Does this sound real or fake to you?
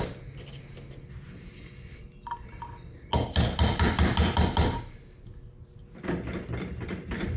real